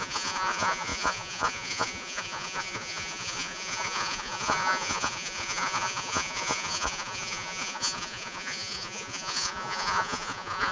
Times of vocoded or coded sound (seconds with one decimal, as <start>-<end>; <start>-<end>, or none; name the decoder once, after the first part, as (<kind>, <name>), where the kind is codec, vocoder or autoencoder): 0.0-10.7 (vocoder, Vocos)